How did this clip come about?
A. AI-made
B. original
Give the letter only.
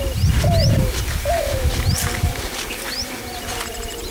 A